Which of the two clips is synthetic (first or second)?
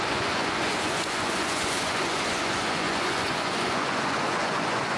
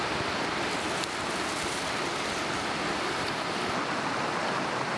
first